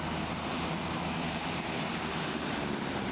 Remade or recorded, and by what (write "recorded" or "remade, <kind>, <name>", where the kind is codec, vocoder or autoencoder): recorded